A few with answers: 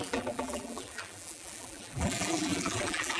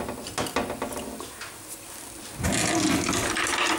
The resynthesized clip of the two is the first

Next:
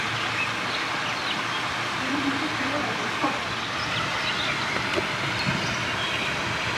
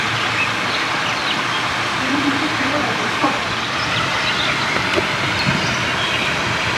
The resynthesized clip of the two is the second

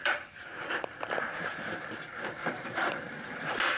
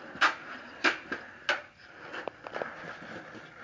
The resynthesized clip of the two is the first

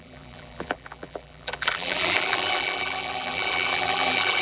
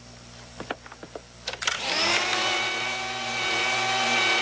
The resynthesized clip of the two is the first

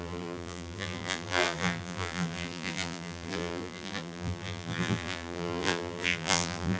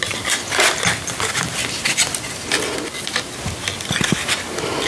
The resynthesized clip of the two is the first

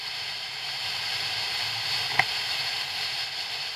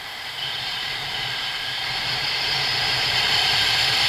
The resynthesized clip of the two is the second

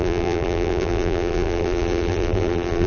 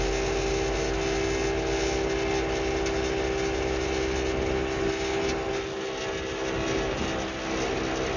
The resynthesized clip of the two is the first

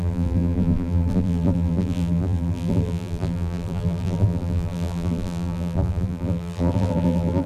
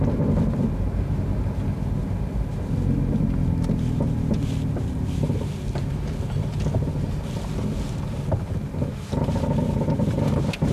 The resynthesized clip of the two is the first